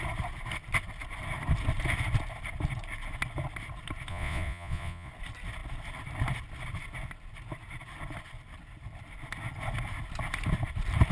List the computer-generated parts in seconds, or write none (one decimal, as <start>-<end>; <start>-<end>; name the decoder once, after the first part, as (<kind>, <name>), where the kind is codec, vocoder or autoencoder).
4.1-5.1 (vocoder, Vocos)